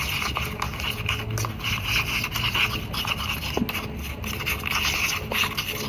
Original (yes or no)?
yes